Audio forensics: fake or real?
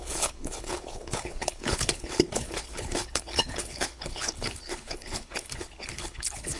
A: fake